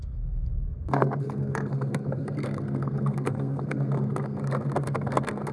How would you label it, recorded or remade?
remade